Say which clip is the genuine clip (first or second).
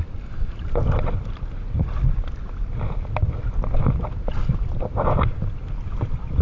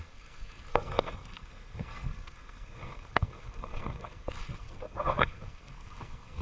first